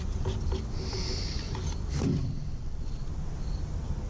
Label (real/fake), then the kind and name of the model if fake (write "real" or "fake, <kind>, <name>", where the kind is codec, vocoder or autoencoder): real